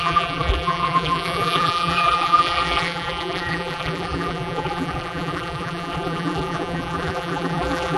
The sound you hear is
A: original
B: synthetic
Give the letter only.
B